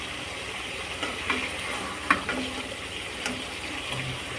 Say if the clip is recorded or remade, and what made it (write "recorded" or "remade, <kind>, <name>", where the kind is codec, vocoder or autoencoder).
recorded